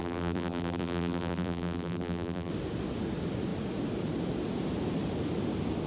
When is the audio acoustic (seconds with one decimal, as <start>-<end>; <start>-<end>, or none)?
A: 2.5-5.9